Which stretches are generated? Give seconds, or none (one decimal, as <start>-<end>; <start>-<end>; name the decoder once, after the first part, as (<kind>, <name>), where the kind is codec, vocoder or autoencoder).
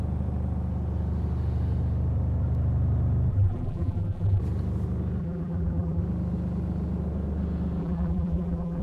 3.3-4.4 (vocoder, BigVGAN v2); 5.2-6.0; 7.8-8.8